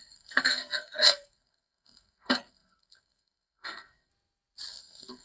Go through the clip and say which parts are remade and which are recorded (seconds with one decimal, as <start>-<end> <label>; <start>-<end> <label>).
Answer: 0.0-4.1 remade; 4.1-4.8 recorded; 4.8-5.2 remade